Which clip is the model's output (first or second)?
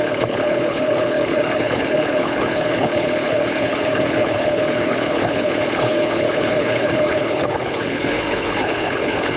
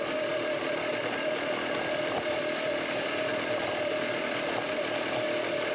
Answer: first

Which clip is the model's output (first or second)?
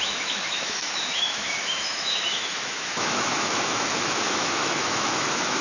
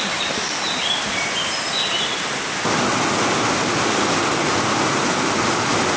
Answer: first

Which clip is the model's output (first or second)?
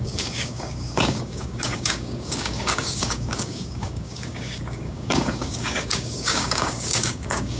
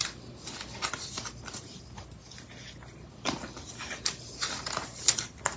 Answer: first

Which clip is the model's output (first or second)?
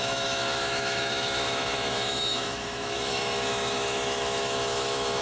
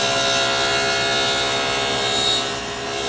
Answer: first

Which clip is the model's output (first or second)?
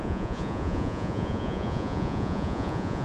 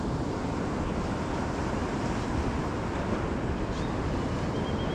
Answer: first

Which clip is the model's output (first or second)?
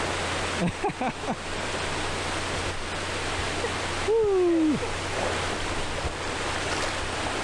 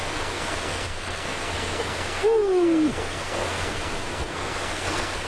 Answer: second